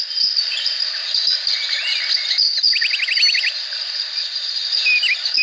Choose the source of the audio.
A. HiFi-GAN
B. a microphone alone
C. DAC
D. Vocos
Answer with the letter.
B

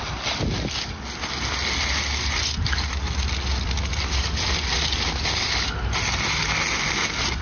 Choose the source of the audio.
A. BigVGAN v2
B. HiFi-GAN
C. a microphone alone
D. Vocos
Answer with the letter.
C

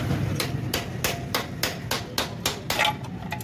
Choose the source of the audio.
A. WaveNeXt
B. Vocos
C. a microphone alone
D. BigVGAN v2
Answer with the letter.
C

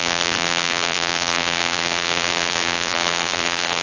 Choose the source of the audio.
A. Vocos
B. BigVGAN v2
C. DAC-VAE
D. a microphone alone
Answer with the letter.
B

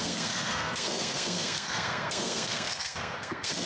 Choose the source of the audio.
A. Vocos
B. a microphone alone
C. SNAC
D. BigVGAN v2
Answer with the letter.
C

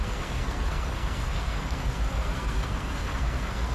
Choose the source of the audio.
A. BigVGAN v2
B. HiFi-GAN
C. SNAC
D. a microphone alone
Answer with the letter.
C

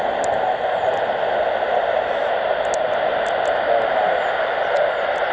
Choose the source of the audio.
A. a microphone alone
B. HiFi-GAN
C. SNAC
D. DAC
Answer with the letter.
A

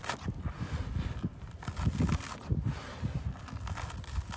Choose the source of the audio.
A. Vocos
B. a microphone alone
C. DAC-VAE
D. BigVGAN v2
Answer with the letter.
B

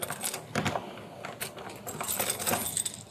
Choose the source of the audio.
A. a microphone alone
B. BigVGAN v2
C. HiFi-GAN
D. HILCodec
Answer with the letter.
A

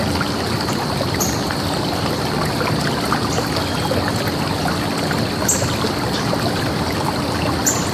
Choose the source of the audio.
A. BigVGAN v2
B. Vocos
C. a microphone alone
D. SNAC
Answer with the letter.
C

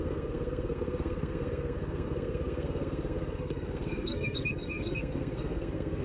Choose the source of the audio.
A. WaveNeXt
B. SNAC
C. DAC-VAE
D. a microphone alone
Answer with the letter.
B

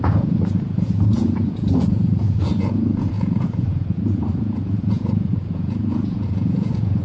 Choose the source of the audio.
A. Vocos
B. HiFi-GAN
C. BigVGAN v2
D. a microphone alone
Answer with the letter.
A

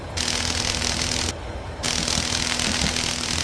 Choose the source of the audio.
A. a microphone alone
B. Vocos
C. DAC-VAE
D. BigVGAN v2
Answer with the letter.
A